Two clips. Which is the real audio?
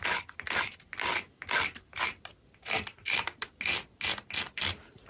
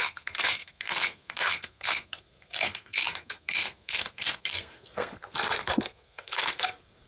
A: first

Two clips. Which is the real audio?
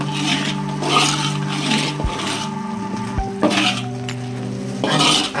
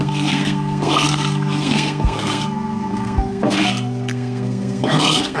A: first